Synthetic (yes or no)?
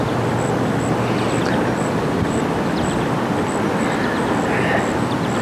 no